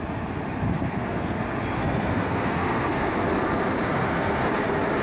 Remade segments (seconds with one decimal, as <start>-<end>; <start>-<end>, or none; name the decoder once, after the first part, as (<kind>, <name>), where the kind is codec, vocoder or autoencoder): 0.8-1.4 (codec, SNAC); 1.8-3.1; 4.0-4.5